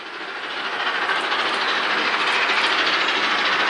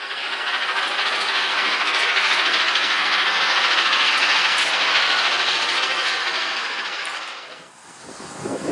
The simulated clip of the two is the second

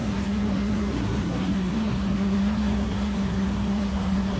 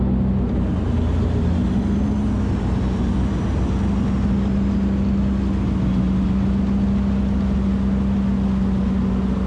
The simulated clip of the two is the first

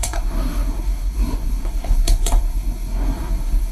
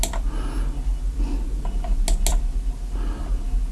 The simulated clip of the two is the first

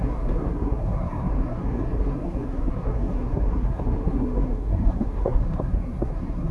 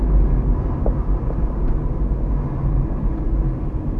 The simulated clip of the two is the first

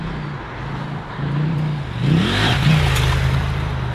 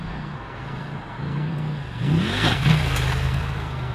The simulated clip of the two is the second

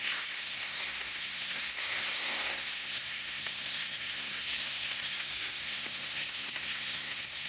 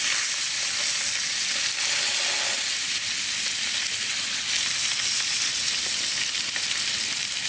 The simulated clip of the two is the first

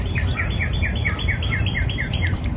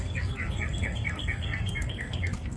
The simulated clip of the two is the second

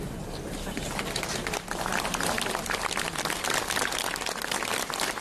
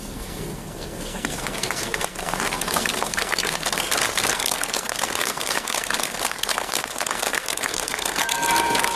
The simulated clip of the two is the second